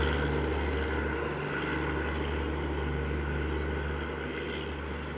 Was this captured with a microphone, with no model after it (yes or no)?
yes